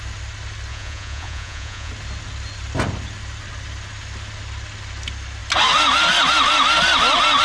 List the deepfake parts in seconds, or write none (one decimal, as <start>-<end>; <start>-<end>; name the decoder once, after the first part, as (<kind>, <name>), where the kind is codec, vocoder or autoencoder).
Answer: 0.7-1.9 (vocoder, Vocos)